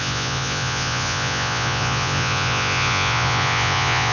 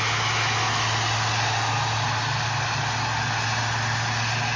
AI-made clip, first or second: first